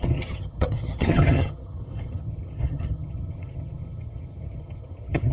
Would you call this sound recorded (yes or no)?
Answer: no